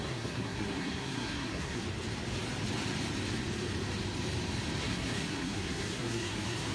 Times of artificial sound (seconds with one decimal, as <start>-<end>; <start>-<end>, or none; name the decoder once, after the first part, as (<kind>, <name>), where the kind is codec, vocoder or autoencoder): 0.0-1.8 (codec, SNAC); 4.8-6.7

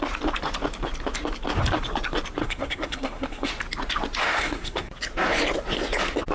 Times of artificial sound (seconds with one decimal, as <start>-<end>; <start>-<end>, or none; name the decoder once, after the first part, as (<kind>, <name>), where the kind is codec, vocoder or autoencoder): 2.4-3.5 (codec, SNAC); 4.2-4.9

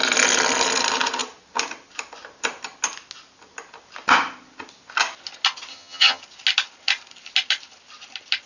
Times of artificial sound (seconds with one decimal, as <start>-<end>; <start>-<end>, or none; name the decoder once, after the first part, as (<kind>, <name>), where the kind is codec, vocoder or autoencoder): 5.7-6.2 (vocoder, HiFi-GAN)